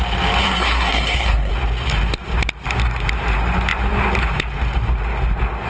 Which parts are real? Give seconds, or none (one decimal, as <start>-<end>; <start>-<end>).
0.0-0.4; 1.5-5.7

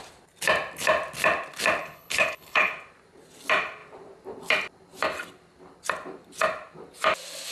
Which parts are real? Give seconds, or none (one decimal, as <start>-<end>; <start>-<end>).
0.0-1.8; 2.7-7.5

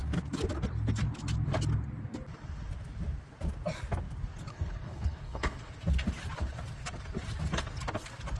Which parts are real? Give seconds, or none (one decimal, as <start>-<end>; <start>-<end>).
0.0-4.5; 5.7-8.4

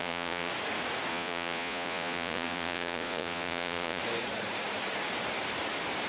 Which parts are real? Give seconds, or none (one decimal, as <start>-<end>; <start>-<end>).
0.5-1.1; 4.0-6.1